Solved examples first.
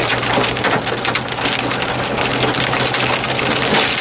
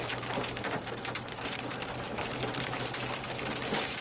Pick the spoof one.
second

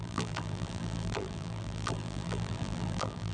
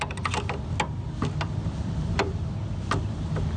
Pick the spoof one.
first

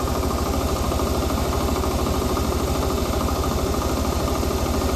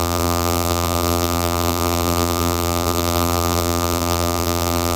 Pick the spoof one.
second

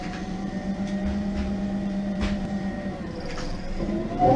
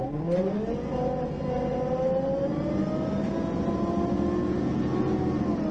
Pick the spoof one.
first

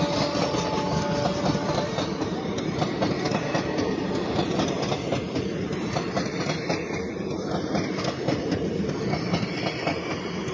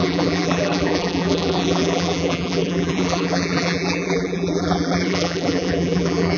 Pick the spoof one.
second